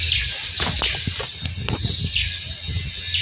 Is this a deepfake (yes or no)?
no